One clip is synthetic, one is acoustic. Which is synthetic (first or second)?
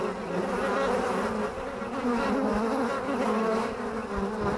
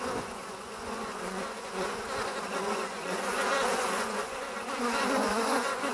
second